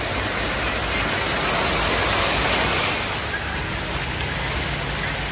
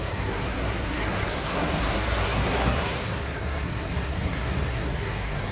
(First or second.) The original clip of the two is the first